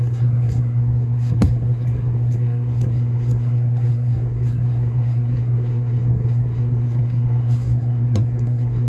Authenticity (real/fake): fake